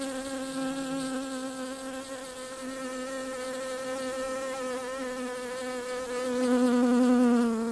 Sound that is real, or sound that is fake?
real